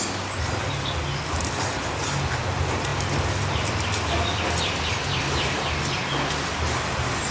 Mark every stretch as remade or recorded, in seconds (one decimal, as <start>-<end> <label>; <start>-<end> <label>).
0.0-7.3 recorded